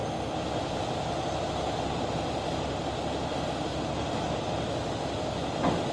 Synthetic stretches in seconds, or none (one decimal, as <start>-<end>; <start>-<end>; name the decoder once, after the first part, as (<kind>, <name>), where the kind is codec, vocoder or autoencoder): none

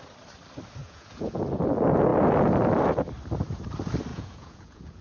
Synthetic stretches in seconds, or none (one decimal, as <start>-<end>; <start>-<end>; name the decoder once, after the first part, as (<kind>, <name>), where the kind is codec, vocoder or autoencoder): 0.8-1.4 (vocoder, Vocos); 4.1-5.0

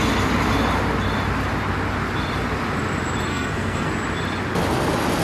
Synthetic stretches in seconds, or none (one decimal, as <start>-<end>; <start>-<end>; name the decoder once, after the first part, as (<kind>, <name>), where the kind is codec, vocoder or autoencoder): 3.3-3.9 (codec, SNAC)

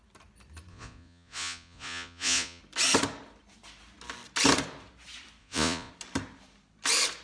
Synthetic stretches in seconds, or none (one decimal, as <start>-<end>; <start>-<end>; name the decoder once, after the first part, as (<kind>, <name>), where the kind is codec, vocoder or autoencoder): 0.7-2.6 (vocoder, Vocos); 5.4-5.9

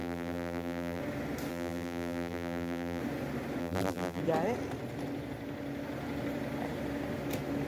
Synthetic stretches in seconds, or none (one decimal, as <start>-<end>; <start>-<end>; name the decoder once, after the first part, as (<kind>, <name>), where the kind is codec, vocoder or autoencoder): 0.0-1.0 (vocoder, BigVGAN v2); 1.5-3.0; 3.6-4.2